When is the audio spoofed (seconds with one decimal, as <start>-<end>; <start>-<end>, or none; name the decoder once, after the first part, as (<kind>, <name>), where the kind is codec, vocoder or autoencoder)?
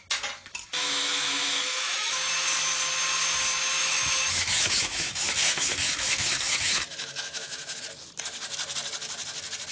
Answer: 0.8-2.3 (autoencoder, DAC-VAE); 3.8-7.8